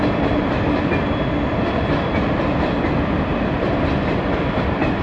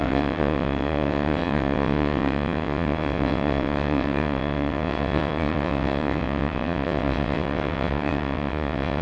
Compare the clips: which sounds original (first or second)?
first